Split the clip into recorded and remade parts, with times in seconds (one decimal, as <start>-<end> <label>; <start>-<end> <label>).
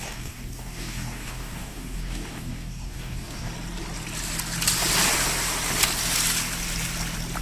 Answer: 0.0-3.5 remade; 3.5-7.4 recorded